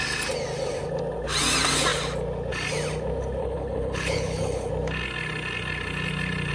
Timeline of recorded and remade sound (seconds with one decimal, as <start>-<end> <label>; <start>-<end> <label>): 0.0-3.4 recorded; 3.4-4.7 remade; 4.7-6.5 recorded